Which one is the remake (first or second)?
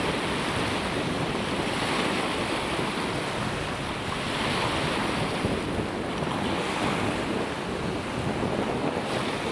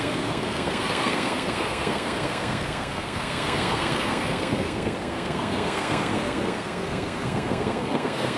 second